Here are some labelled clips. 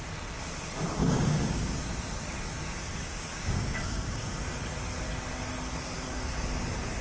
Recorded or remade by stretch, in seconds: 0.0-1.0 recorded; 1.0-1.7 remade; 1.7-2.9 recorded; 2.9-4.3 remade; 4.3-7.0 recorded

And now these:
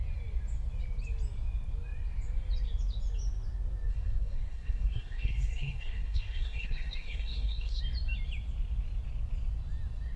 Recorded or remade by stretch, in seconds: 0.0-3.9 recorded; 3.9-7.8 remade; 7.8-10.2 recorded

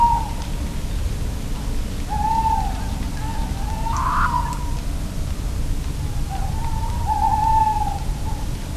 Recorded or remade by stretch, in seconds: 0.0-8.8 recorded

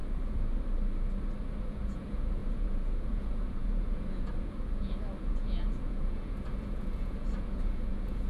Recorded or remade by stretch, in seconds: 0.0-1.6 recorded; 1.6-8.3 remade